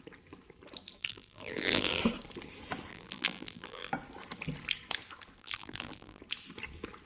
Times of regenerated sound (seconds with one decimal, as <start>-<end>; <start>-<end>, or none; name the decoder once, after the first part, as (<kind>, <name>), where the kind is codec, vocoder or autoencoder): 1.0-2.0 (vocoder, BigVGAN v2); 2.9-3.9; 5.4-6.2